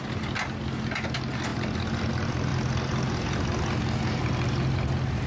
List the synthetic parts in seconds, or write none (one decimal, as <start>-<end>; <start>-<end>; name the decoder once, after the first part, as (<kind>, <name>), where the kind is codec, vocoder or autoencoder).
none